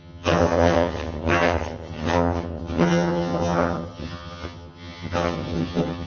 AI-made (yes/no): yes